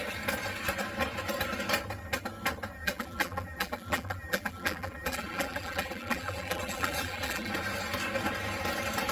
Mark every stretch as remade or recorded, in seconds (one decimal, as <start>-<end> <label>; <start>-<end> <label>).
0.0-2.8 recorded; 2.8-7.5 remade; 7.5-9.1 recorded